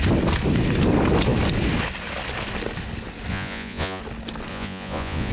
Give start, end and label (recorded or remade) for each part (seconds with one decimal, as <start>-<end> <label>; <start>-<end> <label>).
0.0-3.3 recorded; 3.3-4.0 remade; 4.0-4.5 recorded; 4.5-5.3 remade